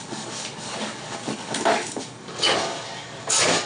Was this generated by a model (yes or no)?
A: yes